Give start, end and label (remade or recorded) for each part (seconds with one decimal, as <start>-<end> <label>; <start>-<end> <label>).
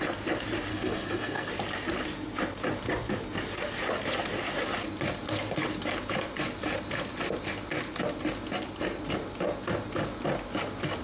0.0-0.7 recorded; 0.7-1.5 remade; 1.5-11.0 recorded